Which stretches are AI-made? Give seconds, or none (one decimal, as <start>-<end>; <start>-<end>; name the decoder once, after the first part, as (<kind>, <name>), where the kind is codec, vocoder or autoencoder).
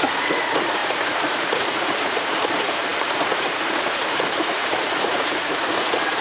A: 0.0-6.2 (vocoder, Vocos)